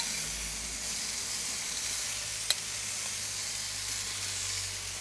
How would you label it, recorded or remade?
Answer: recorded